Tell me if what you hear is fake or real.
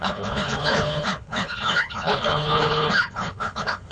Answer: fake